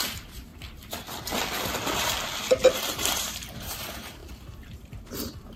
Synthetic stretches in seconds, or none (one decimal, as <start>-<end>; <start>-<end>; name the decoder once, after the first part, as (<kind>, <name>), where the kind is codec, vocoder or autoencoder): 0.0-0.5 (vocoder, BigVGAN v2); 2.8-5.6